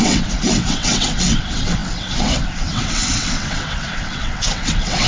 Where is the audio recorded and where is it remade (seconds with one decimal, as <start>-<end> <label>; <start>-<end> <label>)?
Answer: 0.0-5.1 remade